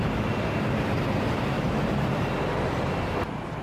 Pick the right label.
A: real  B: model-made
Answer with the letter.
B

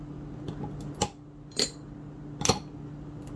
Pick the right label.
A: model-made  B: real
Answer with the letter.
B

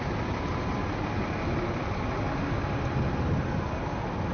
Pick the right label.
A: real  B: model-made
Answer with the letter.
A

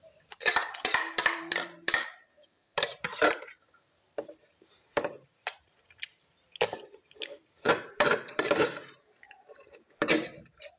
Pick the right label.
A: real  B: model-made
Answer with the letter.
B